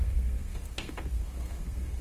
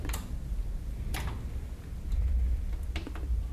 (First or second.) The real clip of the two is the second